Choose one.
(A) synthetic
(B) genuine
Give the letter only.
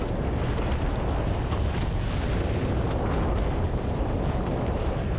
B